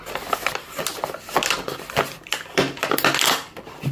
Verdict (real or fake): real